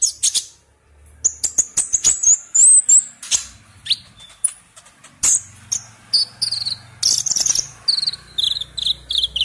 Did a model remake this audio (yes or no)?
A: no